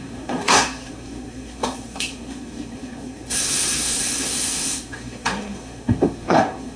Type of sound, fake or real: fake